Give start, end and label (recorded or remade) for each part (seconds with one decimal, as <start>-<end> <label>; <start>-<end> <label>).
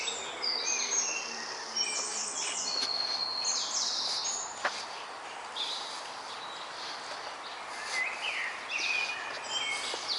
0.0-10.2 recorded